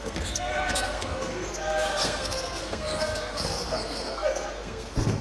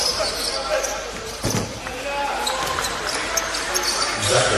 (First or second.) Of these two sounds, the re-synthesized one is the first